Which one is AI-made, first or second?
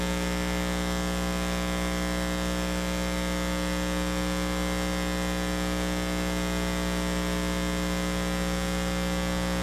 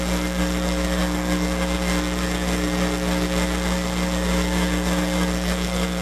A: second